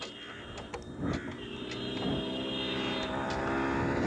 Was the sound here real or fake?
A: real